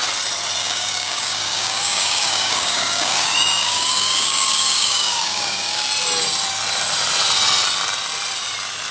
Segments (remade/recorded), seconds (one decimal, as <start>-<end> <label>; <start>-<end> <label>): 0.0-0.6 recorded; 0.6-5.9 remade; 5.9-8.9 recorded